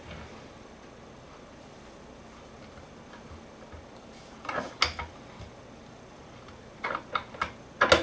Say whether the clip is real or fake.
real